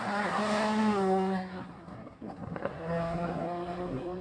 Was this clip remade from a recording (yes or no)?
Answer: yes